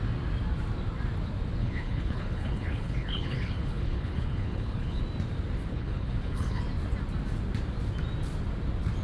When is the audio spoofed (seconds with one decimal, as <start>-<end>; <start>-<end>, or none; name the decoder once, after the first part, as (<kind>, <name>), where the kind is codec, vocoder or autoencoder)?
1.6-5.0 (codec, HILCodec); 5.7-6.6